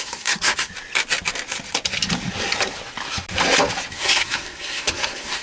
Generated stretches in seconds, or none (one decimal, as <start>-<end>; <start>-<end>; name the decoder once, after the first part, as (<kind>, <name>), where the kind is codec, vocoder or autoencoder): 0.0-0.7 (codec, SNAC); 3.9-5.4